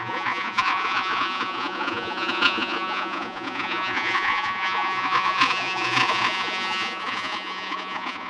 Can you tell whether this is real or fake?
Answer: fake